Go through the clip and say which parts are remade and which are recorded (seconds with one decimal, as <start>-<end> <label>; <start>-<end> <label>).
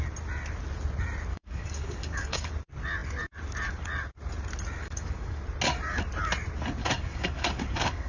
0.0-1.3 recorded; 1.3-2.5 remade; 2.5-4.8 recorded; 4.8-5.4 remade; 5.4-6.8 recorded; 6.8-8.1 remade